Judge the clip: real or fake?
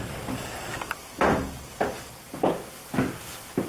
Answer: real